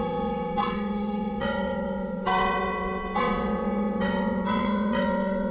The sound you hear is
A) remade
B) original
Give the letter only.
A